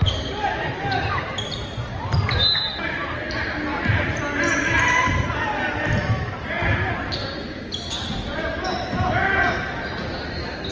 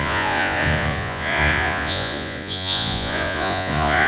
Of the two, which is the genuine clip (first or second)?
first